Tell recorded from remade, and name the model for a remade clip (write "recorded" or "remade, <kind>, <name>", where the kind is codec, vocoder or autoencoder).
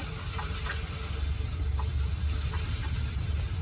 recorded